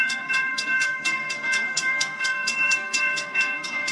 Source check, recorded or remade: remade